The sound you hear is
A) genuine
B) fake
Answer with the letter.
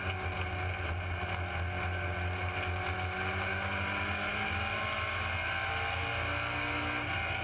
A